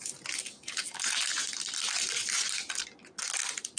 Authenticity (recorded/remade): recorded